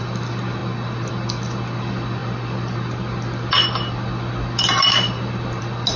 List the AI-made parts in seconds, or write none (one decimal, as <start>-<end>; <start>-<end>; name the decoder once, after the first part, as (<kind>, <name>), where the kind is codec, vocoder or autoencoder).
none